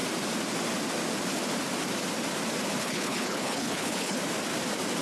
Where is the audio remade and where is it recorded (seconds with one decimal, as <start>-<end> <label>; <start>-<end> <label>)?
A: 0.0-2.8 recorded; 2.8-4.2 remade; 4.2-5.0 recorded